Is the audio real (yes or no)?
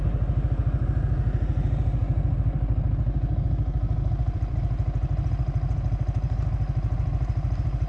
yes